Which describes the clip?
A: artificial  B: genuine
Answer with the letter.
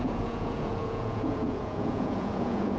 A